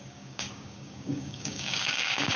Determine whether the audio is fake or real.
fake